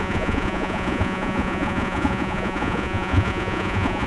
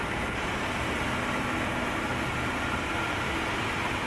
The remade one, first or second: first